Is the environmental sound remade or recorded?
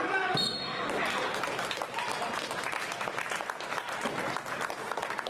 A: recorded